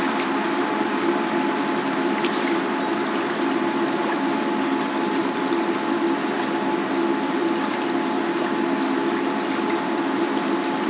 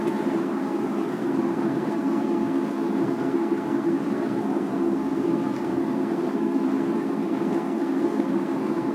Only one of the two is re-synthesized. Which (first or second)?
second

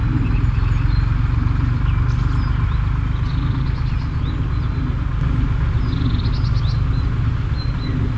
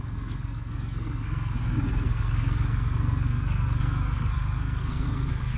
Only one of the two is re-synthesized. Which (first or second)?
second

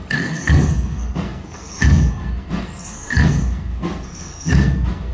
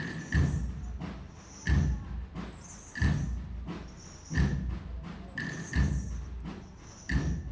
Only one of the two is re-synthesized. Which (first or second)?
first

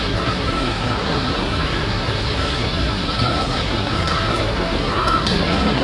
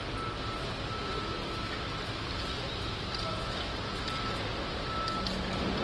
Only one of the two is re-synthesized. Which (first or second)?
first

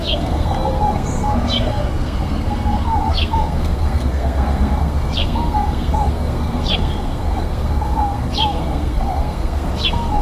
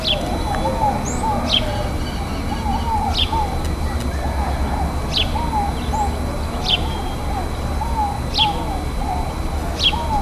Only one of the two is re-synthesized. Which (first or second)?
first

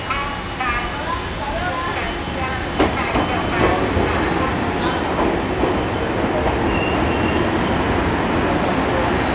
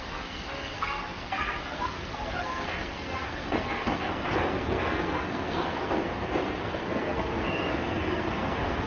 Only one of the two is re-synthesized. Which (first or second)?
second